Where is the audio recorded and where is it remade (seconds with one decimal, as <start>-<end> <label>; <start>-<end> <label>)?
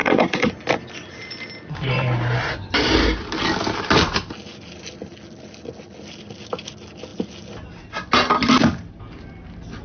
0.0-0.5 remade; 0.5-9.8 recorded